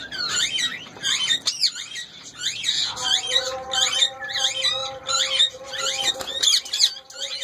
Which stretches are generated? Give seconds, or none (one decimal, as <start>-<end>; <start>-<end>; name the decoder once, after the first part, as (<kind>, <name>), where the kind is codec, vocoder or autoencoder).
none